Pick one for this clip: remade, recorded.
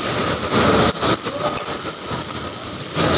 recorded